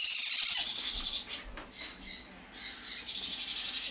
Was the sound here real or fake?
real